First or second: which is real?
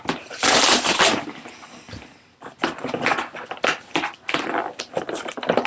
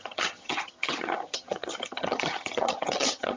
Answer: first